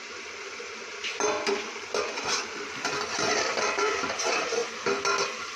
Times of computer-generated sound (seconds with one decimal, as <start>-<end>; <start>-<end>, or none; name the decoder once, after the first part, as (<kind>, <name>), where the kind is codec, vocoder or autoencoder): 0.0-4.6 (vocoder, BigVGAN v2)